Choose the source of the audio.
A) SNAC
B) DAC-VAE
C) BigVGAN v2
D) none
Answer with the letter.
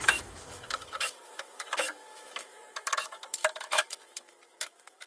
B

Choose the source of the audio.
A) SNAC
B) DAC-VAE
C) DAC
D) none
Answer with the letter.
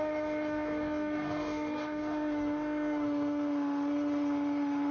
B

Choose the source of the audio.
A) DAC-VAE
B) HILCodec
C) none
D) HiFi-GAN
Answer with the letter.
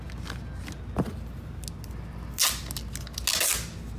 C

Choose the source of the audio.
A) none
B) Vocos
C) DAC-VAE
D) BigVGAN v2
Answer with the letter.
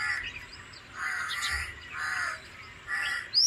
A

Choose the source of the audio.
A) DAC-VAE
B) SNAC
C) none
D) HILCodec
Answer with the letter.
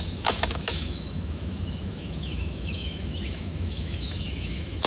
A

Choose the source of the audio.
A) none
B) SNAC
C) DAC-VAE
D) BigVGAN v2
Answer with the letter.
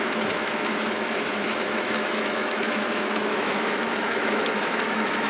C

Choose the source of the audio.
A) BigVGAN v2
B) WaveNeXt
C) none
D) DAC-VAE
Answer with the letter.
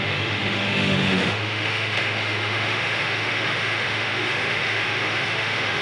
D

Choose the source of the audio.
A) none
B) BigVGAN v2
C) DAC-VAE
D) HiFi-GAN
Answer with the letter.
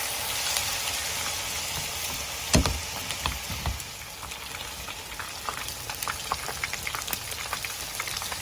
A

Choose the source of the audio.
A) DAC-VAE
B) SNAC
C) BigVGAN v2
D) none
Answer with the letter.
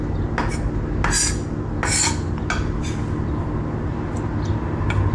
D